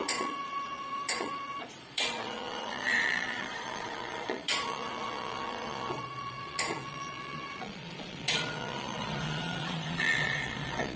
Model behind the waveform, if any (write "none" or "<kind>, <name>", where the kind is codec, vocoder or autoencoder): vocoder, Vocos